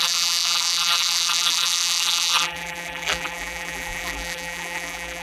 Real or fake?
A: fake